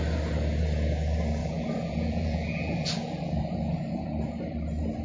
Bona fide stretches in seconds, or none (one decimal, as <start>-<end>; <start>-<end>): 0.0-1.4; 4.4-5.0